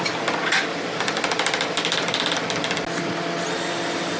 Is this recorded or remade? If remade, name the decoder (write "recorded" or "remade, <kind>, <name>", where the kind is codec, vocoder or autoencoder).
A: recorded